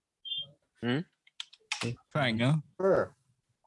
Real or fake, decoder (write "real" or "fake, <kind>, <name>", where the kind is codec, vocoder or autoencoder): real